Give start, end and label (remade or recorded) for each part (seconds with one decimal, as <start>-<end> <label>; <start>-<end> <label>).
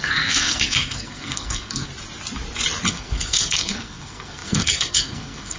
0.0-1.9 remade; 1.9-2.9 recorded; 2.9-5.6 remade